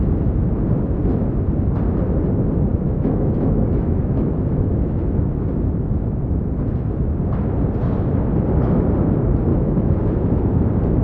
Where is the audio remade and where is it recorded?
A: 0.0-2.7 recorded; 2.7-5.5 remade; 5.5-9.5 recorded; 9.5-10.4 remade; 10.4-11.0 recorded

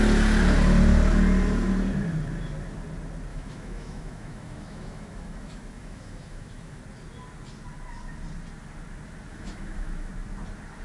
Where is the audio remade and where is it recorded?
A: 0.0-3.3 recorded; 3.3-6.8 remade; 6.8-9.3 recorded; 9.3-10.1 remade; 10.1-10.8 recorded

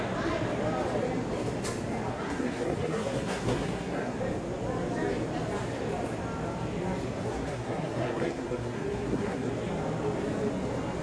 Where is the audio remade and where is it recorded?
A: 0.0-2.1 recorded; 2.1-4.2 remade; 4.2-7.3 recorded; 7.3-9.5 remade; 9.5-11.0 recorded